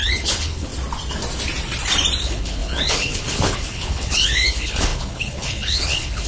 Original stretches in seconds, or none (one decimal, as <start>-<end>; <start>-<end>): 0.7-2.2